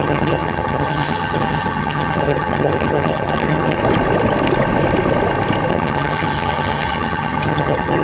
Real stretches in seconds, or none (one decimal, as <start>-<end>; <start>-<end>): 3.8-5.7